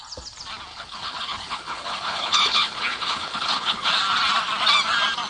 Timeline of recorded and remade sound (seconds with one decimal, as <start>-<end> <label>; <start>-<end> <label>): 0.0-0.7 recorded; 0.7-3.9 remade; 3.9-5.3 recorded